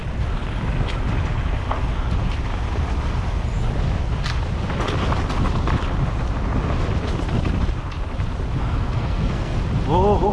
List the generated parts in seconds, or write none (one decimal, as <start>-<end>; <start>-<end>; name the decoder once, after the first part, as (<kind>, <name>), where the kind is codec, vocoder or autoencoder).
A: 8.6-9.6 (codec, SNAC)